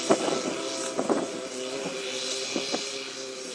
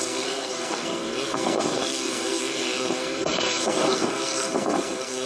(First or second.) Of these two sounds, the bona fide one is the first